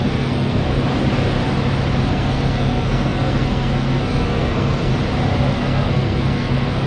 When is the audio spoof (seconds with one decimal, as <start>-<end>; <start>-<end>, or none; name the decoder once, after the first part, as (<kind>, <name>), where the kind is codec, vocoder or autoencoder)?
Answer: 0.0-0.6 (codec, SNAC); 2.1-4.9; 5.5-6.9